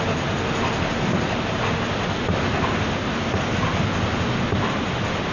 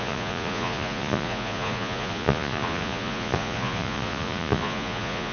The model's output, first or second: second